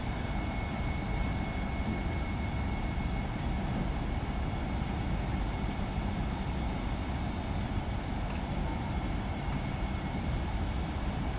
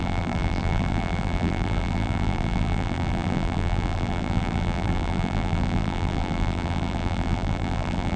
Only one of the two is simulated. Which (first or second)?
second